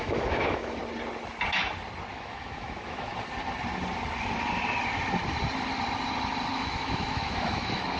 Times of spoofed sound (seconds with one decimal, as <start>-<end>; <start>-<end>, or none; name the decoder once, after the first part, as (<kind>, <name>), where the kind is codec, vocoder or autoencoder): 0.0-0.8 (autoencoder, DAC-VAE); 2.1-3.1; 6.5-8.0